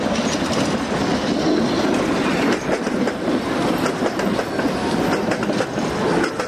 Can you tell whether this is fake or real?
real